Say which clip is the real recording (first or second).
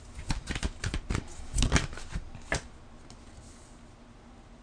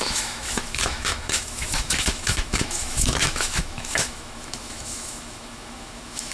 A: first